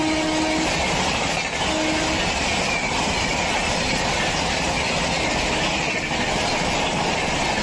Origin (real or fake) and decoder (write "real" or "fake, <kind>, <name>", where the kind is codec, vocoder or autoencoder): real